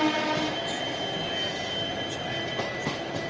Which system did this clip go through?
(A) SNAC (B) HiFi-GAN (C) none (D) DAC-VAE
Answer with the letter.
C